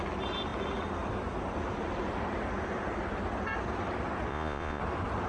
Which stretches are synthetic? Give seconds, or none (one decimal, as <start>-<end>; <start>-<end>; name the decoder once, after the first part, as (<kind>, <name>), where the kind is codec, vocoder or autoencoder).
4.3-4.8 (vocoder, Vocos)